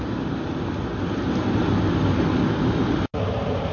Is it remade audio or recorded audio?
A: recorded